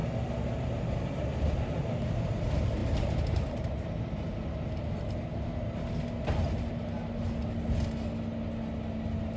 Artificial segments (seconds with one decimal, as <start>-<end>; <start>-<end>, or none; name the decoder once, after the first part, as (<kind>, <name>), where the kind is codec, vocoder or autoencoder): none